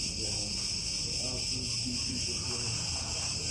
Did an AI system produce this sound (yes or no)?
no